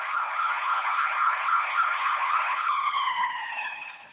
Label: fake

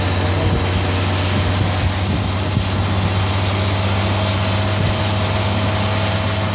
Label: real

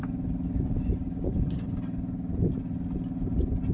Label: real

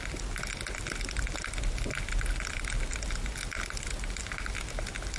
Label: real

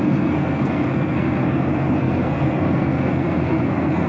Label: fake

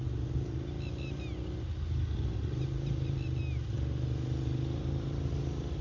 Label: real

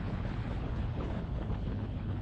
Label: fake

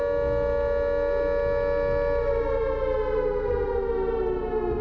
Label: real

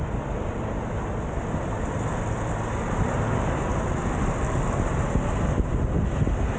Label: real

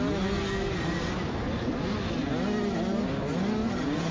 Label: real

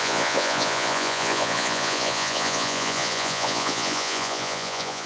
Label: fake